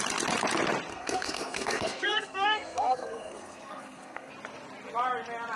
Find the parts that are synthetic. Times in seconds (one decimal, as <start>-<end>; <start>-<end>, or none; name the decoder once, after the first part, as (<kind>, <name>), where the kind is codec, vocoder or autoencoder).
0.9-4.3 (codec, SNAC)